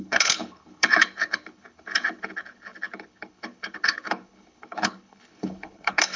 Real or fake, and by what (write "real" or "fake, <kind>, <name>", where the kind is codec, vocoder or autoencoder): fake, codec, HILCodec